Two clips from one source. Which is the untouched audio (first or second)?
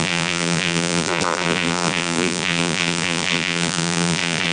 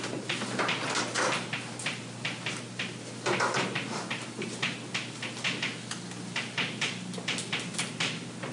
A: second